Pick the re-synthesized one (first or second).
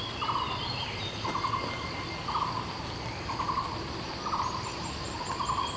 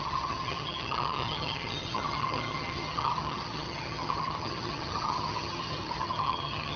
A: second